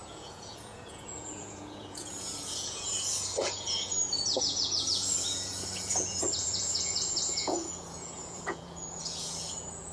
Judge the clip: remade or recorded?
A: remade